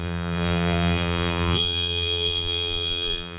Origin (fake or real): fake